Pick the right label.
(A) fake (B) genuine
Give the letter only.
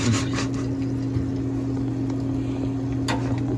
B